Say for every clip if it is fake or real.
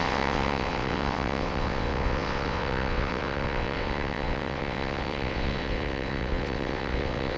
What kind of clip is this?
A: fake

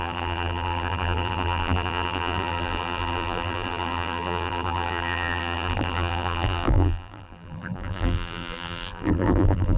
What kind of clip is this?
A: fake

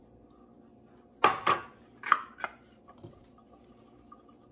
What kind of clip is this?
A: real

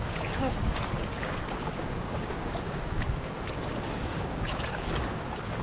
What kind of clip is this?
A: fake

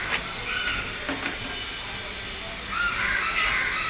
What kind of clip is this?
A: real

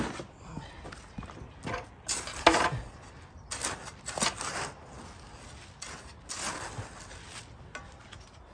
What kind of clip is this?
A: real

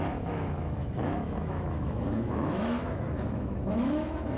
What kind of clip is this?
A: fake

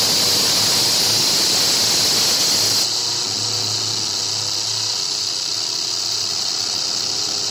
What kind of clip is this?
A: real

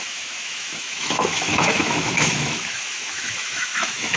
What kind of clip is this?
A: fake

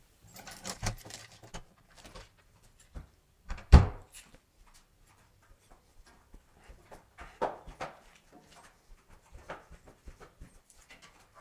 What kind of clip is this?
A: fake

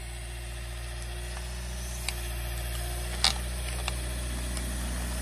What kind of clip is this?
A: real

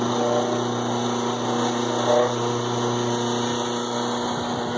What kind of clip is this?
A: real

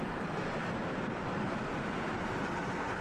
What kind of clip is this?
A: real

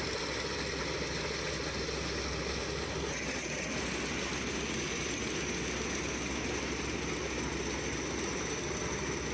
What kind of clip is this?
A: real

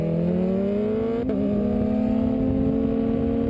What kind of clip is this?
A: real